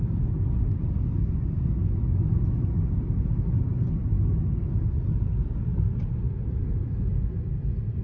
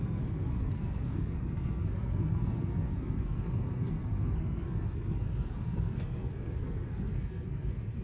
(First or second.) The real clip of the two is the first